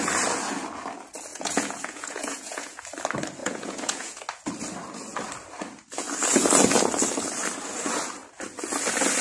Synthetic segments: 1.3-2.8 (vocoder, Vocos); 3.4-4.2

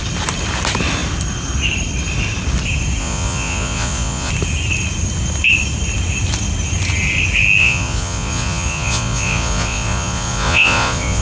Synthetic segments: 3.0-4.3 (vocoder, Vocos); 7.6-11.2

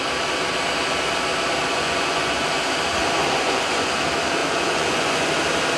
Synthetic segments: 1.7-2.6 (vocoder, Vocos); 3.2-3.9; 4.4-5.3

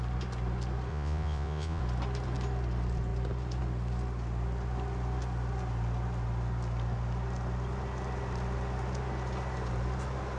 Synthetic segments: 0.9-1.8 (vocoder, Vocos)

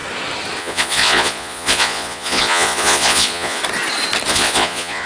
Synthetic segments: 0.6-3.6 (vocoder, Vocos); 4.3-5.1

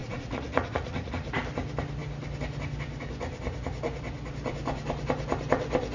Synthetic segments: 0.0-1.1 (vocoder, Vocos)

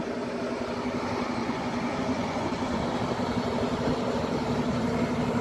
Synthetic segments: 1.4-2.8 (vocoder, Vocos)